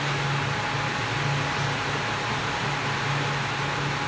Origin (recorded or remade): recorded